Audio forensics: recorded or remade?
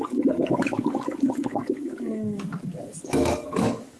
remade